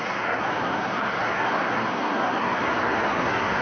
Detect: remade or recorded remade